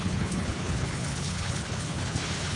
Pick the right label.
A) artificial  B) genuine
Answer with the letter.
A